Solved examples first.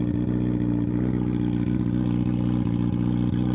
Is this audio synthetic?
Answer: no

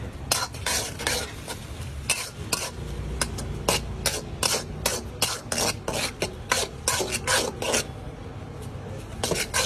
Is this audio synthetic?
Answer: no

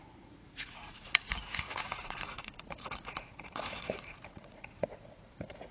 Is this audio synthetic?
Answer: yes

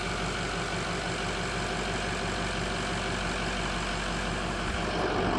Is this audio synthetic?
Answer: no